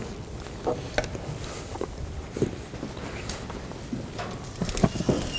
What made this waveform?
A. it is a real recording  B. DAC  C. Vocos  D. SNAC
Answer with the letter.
A